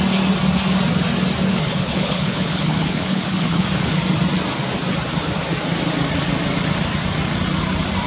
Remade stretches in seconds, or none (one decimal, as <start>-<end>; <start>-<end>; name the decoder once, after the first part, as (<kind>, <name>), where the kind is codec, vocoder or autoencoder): 1.5-3.9 (codec, HILCodec)